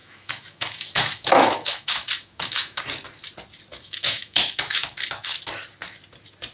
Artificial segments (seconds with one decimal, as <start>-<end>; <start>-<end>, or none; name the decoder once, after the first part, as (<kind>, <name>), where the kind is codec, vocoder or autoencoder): 0.0-2.8 (autoencoder, DAC-VAE); 3.7-5.4